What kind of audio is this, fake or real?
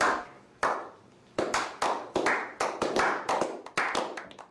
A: real